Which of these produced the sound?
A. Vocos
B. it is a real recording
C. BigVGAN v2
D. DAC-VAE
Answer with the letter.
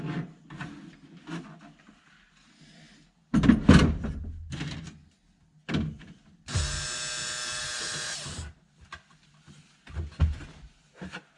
B